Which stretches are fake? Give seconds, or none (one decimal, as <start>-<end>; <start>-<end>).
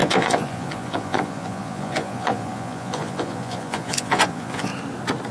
0.0-4.7